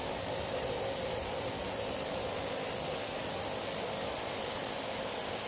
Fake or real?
real